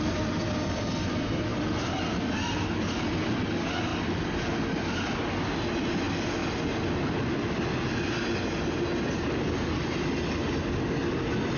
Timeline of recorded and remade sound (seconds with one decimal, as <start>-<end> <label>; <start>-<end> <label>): 0.0-11.6 recorded